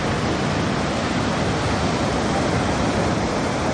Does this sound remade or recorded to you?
recorded